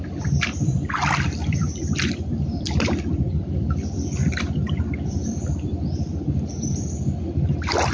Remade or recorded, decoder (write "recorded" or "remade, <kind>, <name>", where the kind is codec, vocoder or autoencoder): remade, vocoder, BigVGAN v2